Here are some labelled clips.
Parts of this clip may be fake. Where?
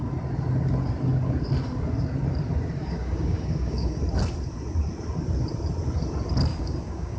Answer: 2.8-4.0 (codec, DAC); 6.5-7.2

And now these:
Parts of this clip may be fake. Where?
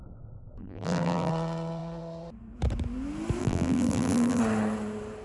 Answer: 0.6-1.3 (vocoder, BigVGAN v2); 3.4-4.4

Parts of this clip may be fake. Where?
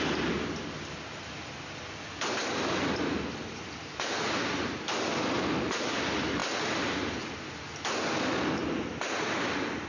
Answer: none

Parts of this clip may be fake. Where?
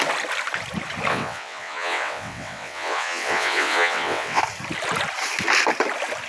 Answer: 1.1-4.4 (vocoder, WaveNeXt)